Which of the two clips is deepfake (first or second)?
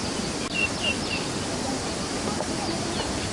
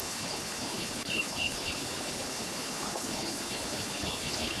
second